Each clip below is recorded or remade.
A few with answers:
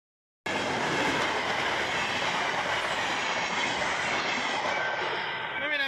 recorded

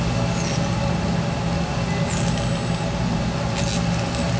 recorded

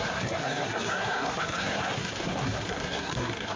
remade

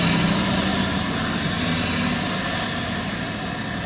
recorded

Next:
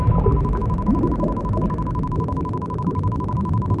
recorded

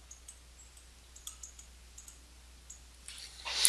recorded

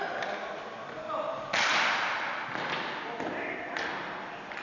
recorded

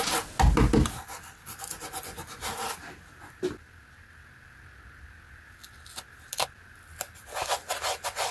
recorded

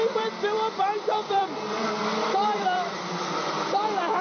remade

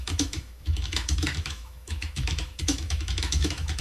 remade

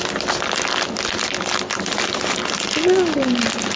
recorded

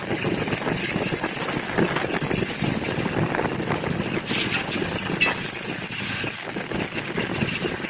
recorded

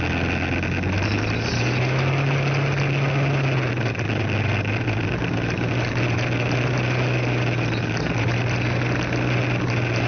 recorded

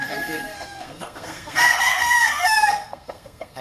remade